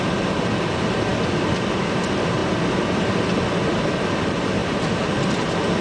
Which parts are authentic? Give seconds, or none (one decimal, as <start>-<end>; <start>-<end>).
0.0-5.8